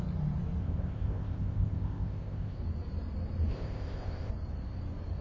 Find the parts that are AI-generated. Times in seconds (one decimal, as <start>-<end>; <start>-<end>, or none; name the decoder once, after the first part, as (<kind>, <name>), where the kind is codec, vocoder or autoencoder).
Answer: 0.6-2.6 (codec, ZipCodec); 3.5-4.3